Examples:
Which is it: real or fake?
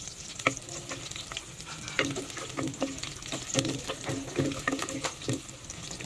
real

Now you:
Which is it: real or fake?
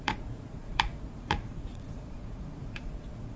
fake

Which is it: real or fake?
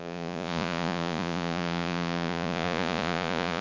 fake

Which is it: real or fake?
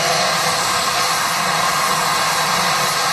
real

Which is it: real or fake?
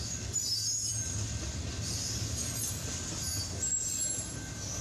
real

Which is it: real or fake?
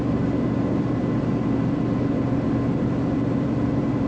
real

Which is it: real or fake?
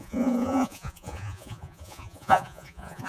fake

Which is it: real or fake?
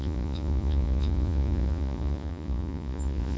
fake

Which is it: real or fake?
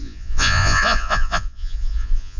fake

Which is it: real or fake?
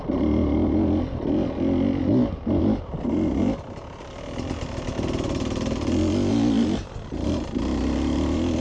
real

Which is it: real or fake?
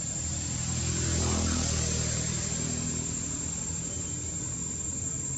real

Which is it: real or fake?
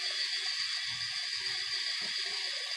real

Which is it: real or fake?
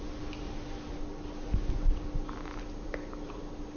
real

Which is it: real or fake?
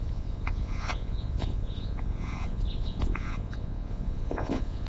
fake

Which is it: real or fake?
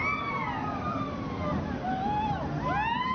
real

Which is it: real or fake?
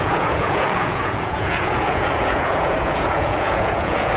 fake